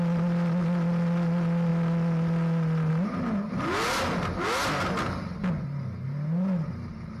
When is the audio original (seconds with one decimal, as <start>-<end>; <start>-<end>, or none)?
0.0-7.2